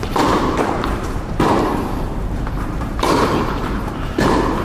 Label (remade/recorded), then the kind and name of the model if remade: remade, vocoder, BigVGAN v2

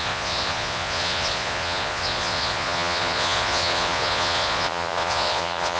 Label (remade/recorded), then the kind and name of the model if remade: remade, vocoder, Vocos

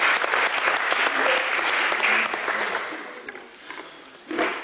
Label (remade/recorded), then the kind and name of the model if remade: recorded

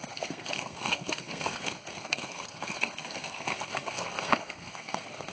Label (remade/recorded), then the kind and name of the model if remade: remade, codec, SNAC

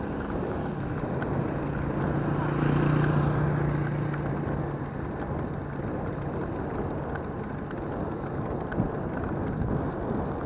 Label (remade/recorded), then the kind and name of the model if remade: recorded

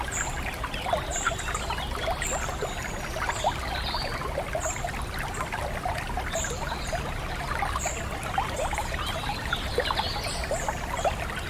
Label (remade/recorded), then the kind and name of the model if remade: recorded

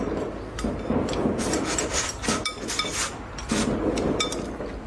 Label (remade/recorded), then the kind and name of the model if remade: recorded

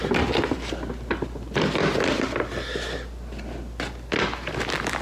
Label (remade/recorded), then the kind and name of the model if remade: recorded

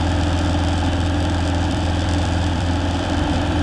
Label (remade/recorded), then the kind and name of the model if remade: remade, vocoder, BigVGAN v2